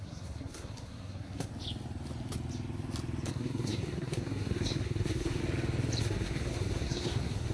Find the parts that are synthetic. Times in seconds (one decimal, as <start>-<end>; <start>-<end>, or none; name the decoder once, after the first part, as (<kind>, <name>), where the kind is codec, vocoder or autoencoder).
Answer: 0.0-1.5 (codec, SNAC); 3.3-5.4; 6.0-7.5